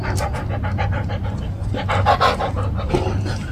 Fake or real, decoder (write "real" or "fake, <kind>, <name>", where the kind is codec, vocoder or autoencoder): real